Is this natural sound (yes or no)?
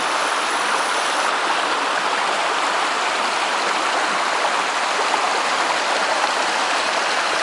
yes